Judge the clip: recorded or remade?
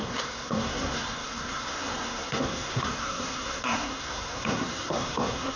remade